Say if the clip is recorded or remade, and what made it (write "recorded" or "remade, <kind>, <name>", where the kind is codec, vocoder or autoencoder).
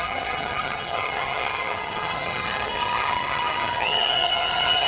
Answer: remade, vocoder, HiFi-GAN